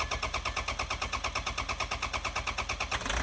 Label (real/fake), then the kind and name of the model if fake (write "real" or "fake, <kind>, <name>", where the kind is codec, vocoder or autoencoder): real